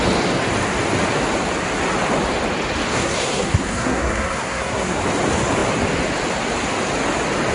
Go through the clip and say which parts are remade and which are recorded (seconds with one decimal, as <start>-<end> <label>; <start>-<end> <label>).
0.0-2.9 recorded; 2.9-5.0 remade; 5.0-7.5 recorded